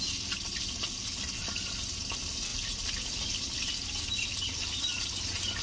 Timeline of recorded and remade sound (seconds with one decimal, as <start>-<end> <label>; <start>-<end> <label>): 0.0-1.4 recorded; 1.4-2.0 remade; 2.0-2.5 recorded; 2.5-4.8 remade; 4.8-5.6 recorded